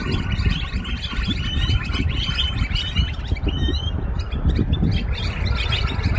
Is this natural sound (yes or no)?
yes